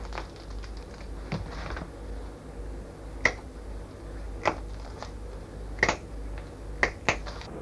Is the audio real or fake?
real